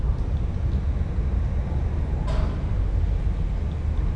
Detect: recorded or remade recorded